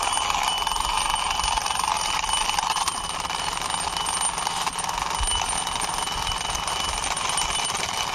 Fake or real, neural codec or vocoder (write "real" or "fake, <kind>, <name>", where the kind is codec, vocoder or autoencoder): real